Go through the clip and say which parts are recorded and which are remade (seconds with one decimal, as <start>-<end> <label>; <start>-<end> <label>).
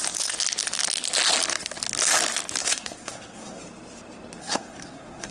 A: 0.0-2.6 recorded; 2.6-3.6 remade; 3.6-4.4 recorded; 4.4-5.3 remade